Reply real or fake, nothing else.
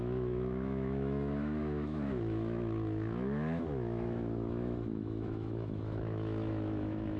fake